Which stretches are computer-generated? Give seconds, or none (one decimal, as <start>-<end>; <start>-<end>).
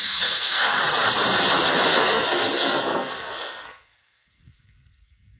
0.0-0.8; 2.0-5.4